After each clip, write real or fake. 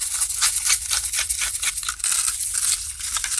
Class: real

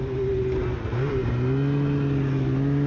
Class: real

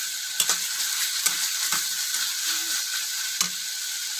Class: real